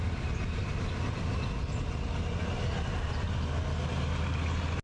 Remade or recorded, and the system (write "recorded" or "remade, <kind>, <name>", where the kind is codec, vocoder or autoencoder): recorded